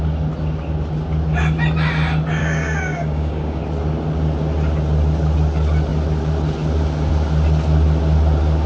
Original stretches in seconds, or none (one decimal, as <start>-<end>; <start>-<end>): 0.0-2.4; 3.6-8.7